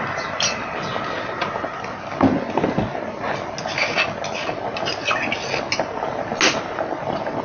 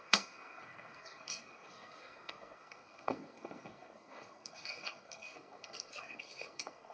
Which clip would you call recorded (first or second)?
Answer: first